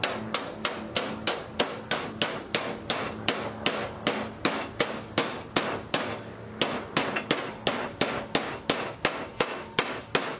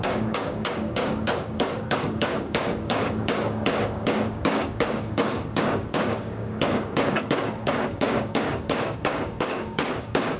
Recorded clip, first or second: first